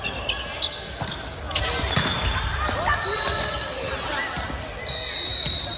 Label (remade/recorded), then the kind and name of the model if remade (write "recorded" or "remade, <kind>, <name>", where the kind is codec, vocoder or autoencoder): recorded